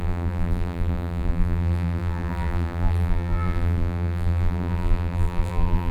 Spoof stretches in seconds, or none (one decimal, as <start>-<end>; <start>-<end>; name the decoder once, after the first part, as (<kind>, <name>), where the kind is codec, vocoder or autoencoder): 0.0-5.9 (vocoder, BigVGAN v2)